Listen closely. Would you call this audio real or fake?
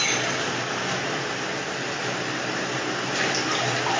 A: real